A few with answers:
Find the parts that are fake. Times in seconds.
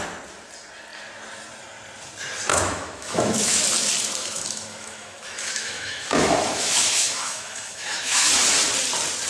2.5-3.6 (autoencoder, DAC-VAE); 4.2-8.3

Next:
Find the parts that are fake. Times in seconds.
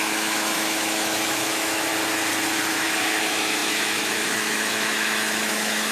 0.0-1.9 (autoencoder, DAC-VAE); 2.7-5.9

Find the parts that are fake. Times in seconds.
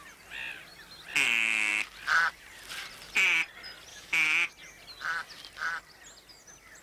3.9-4.5 (autoencoder, DAC-VAE)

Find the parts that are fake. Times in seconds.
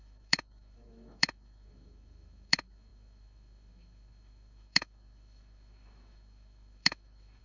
0.0-7.4 (autoencoder, DAC-VAE)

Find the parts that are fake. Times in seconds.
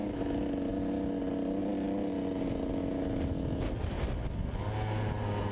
0.0-0.7 (autoencoder, DAC-VAE)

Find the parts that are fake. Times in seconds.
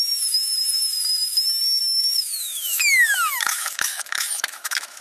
0.0-5.0 (autoencoder, DAC-VAE)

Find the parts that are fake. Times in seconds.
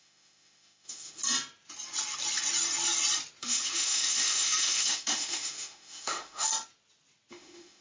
0.0-1.2 (autoencoder, DAC-VAE); 3.4-6.5; 7.3-7.8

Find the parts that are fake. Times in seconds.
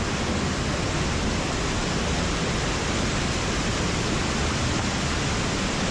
none